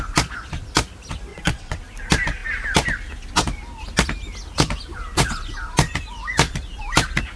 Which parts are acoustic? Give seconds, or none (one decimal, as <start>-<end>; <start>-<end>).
0.0-1.3; 1.8-7.4